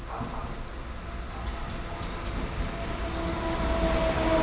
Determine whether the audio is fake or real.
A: real